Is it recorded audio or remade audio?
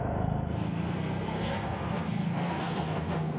remade